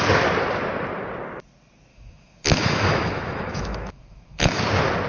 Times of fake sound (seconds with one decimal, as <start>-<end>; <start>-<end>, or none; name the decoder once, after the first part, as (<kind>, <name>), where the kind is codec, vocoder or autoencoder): 1.9-4.6 (autoencoder, DAC-VAE)

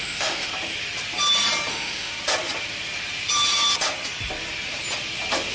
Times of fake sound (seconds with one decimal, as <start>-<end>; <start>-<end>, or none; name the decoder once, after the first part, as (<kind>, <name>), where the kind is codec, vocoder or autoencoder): 0.0-0.5 (autoencoder, DAC-VAE); 1.7-2.1

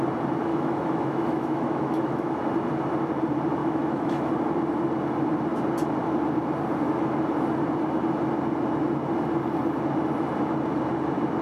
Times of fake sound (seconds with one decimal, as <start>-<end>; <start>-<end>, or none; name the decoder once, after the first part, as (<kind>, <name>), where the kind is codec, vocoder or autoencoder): 0.5-2.4 (autoencoder, DAC-VAE); 3.6-4.3

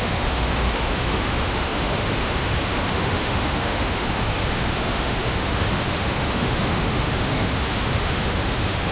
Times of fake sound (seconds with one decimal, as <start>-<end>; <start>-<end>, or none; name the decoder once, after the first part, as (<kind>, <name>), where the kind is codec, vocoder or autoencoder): 0.0-8.9 (autoencoder, DAC-VAE)